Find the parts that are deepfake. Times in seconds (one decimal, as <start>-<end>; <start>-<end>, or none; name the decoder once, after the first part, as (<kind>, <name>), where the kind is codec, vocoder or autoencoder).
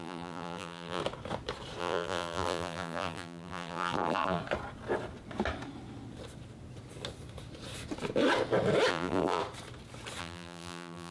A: 0.0-1.0 (vocoder, BigVGAN v2); 1.8-4.4; 8.9-9.4; 10.2-11.1